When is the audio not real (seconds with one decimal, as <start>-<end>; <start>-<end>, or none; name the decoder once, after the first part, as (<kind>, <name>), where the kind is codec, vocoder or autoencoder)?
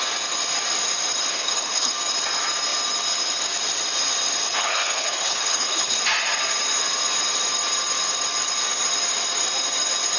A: 1.3-1.9 (codec, HILCodec); 4.5-6.0